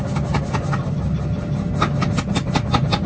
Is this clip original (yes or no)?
yes